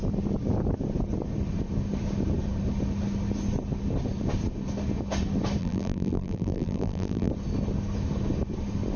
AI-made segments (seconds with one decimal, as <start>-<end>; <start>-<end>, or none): 5.6-7.3